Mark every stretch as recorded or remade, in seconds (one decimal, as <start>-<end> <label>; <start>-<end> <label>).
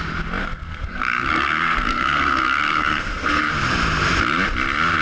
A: 0.0-0.4 recorded; 0.4-3.4 remade; 3.4-5.0 recorded